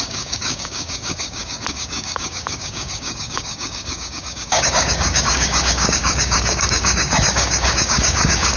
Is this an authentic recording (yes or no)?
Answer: no